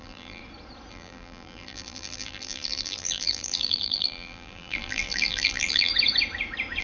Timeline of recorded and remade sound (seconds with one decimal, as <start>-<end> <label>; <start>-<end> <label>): 0.0-0.4 remade; 0.4-0.9 recorded; 0.9-5.9 remade; 5.9-6.8 recorded